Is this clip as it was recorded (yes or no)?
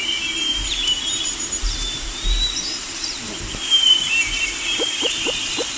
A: no